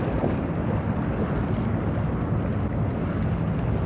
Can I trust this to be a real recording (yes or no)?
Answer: yes